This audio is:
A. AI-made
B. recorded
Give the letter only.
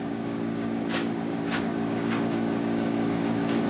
A